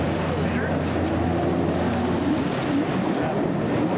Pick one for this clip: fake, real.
real